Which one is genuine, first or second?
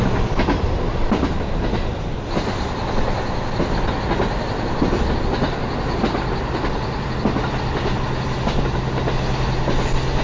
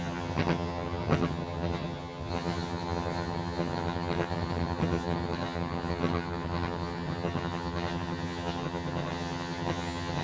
first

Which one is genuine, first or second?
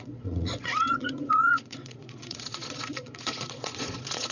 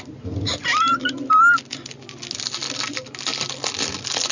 second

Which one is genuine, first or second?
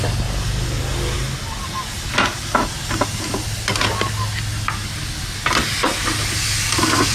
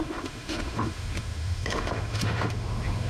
first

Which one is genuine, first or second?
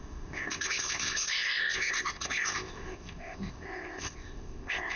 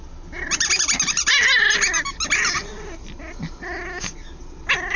second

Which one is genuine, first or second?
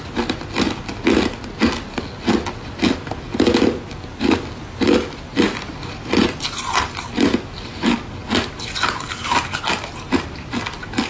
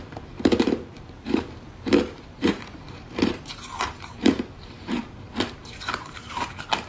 first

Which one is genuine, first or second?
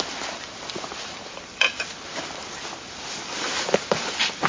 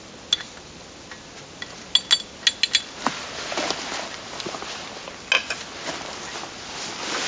second